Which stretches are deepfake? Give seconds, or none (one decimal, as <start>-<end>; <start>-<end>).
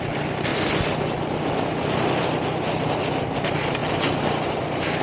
0.0-0.5; 3.2-3.8